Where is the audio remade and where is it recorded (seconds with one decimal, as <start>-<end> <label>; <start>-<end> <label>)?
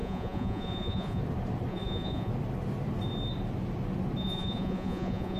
0.0-1.2 remade; 1.2-1.7 recorded; 1.7-2.3 remade; 2.3-4.2 recorded; 4.2-5.4 remade